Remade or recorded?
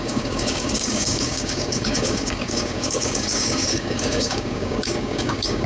remade